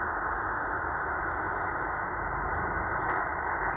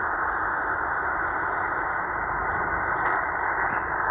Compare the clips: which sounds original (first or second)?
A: first